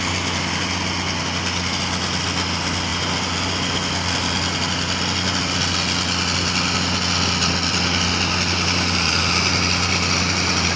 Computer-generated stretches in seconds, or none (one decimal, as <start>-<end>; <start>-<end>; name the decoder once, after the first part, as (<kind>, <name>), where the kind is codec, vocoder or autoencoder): none